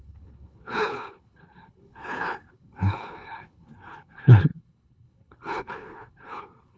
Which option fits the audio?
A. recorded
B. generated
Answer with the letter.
B